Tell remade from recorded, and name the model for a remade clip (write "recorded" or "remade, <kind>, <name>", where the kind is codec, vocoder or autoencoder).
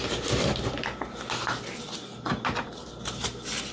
recorded